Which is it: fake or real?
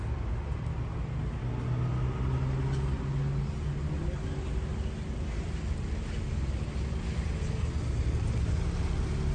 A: real